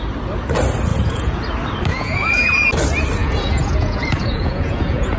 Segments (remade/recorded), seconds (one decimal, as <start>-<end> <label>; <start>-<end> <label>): 0.0-0.9 recorded; 0.9-1.4 remade; 1.4-1.9 recorded; 1.9-2.5 remade; 2.5-3.2 recorded; 3.2-5.2 remade